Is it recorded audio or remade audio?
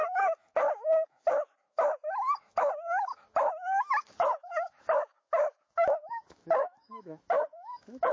remade